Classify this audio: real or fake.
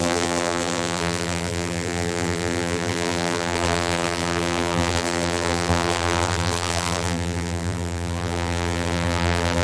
fake